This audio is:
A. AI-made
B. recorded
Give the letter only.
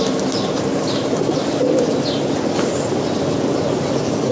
B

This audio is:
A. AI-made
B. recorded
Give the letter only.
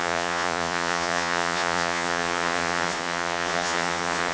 A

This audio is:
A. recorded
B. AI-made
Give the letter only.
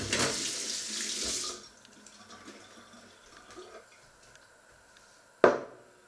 A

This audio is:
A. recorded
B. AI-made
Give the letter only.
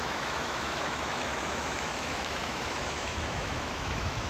B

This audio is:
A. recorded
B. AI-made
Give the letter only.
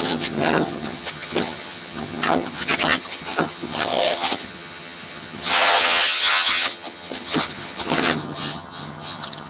B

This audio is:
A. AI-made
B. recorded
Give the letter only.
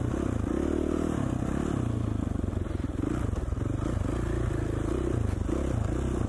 B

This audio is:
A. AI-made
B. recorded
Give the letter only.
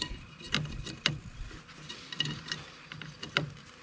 B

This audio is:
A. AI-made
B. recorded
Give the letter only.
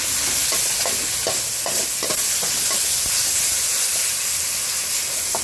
B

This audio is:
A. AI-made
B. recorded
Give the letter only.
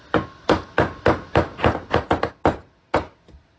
B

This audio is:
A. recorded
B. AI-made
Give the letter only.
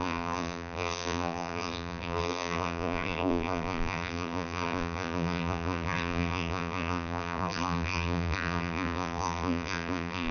B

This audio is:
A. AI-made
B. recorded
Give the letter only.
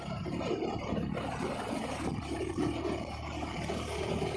B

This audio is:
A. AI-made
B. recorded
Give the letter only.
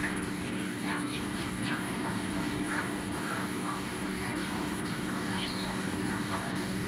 A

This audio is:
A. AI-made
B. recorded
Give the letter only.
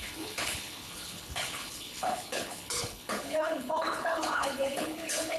A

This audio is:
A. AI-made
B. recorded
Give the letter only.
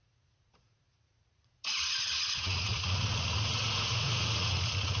A